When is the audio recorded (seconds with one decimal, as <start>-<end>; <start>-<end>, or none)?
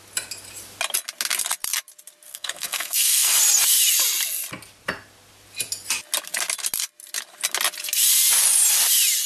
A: 0.0-2.3; 3.4-9.3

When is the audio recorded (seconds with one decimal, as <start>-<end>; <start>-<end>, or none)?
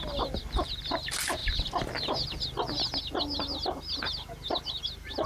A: 0.0-1.4; 3.0-5.3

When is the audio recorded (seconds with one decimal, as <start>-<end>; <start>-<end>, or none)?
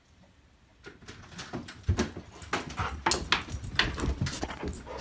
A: 0.0-5.0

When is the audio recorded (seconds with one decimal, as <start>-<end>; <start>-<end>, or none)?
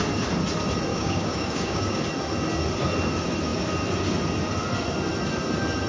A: 0.0-0.9; 2.0-5.9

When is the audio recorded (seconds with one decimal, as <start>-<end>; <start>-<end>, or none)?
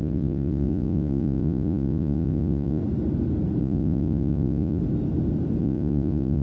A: 2.8-3.6; 4.8-5.6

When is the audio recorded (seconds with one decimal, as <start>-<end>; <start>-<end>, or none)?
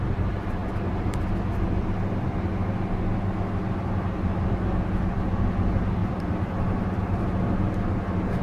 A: 0.0-6.0; 7.2-8.4